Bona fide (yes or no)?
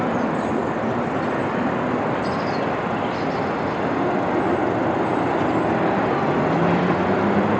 yes